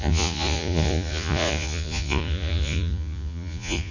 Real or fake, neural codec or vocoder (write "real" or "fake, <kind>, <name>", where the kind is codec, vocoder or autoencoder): fake, vocoder, Vocos